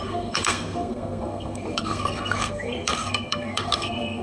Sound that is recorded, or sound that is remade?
remade